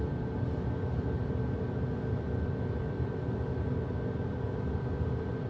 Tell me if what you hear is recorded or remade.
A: recorded